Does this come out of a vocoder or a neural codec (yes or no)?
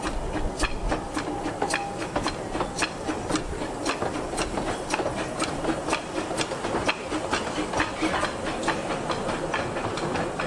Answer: no